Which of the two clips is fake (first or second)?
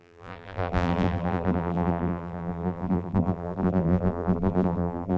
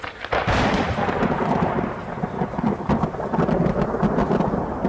first